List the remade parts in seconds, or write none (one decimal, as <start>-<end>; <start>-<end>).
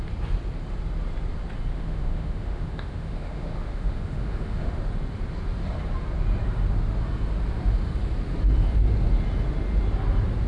1.7-4.8